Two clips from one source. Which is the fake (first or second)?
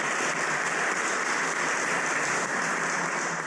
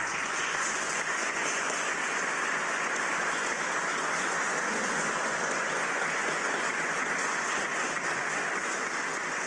second